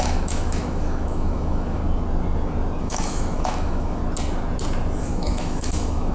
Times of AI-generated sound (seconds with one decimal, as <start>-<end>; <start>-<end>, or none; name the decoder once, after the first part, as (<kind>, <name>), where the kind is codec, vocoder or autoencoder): 0.0-1.8 (autoencoder, DAC-VAE); 2.8-4.0; 5.0-6.1